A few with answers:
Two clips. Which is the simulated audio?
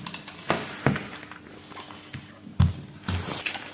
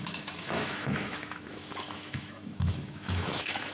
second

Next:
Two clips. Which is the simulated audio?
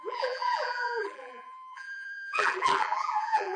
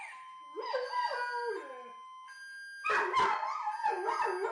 first